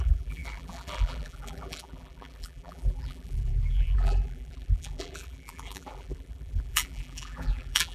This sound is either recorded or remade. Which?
remade